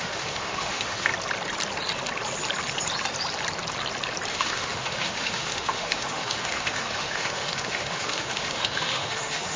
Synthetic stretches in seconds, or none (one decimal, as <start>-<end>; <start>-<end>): 0.0-1.1; 4.3-9.6